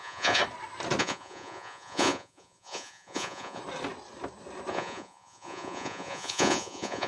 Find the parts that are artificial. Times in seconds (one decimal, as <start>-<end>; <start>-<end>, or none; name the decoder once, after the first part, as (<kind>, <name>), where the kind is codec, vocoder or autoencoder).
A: 0.0-0.4 (vocoder, Vocos); 1.0-3.6; 4.7-7.1